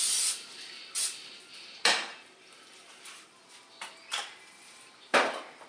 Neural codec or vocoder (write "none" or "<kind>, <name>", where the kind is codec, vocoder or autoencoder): vocoder, BigVGAN v2